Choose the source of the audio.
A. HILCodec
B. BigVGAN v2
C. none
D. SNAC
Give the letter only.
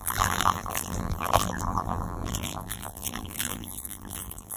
B